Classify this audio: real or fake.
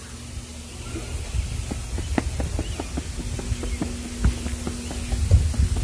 real